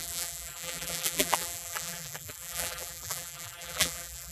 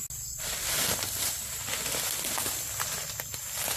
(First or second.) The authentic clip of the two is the second